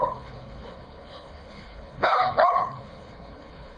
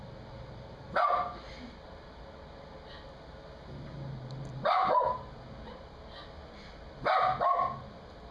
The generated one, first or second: first